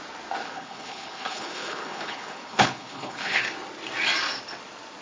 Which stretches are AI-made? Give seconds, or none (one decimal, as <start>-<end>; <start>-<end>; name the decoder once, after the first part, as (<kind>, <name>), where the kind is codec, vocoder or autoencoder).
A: 0.4-3.4 (codec, HILCodec)